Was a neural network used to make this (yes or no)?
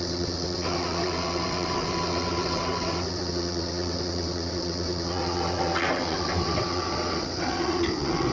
yes